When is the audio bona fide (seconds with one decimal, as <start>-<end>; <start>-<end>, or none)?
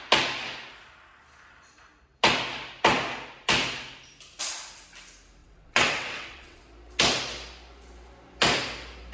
0.0-5.4; 6.6-9.1